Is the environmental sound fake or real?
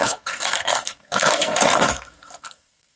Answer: fake